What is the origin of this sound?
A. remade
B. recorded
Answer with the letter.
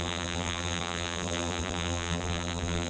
A